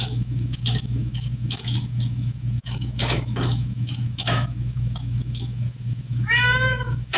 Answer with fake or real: fake